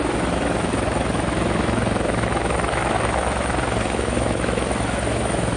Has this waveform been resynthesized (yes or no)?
yes